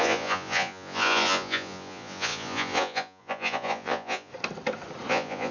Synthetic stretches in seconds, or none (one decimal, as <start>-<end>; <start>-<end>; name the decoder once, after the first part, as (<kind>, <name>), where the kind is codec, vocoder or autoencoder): 0.0-4.3 (vocoder, Vocos); 5.1-5.5